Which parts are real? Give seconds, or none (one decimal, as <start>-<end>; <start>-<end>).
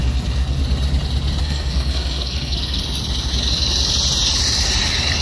0.6-1.4; 2.8-5.2